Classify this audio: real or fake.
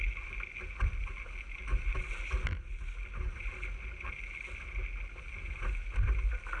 real